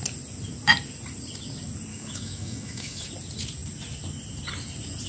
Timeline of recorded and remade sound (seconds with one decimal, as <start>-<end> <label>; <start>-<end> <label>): 0.0-1.9 recorded; 1.9-3.1 remade; 3.1-5.1 recorded